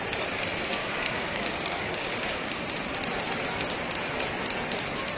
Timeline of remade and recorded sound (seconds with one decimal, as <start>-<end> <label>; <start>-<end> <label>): 0.0-0.8 recorded; 0.8-2.6 remade; 2.6-5.2 recorded